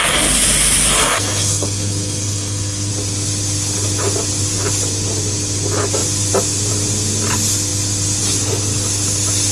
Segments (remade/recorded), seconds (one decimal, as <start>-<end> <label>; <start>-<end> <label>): 0.0-1.0 recorded; 1.0-2.9 remade; 2.9-9.5 recorded